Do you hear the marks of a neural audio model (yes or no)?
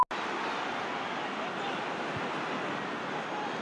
no